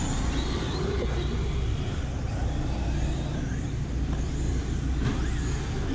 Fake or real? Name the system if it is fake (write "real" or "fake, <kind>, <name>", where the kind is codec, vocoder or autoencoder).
real